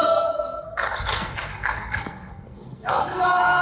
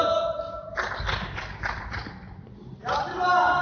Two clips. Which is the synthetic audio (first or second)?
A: first